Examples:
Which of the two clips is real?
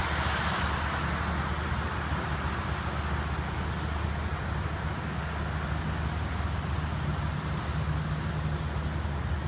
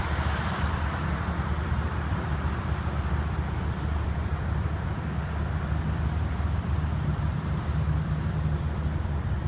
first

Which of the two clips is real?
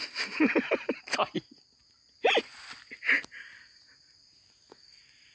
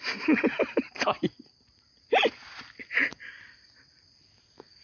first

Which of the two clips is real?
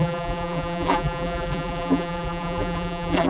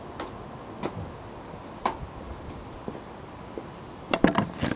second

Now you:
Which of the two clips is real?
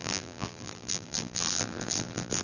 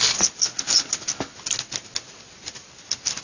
second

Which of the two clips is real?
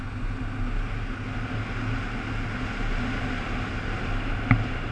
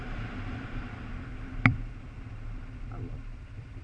first